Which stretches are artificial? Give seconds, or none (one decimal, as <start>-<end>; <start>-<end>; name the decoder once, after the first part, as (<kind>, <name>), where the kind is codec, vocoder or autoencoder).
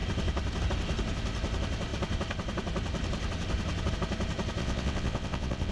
4.6-5.7 (vocoder, WaveNeXt)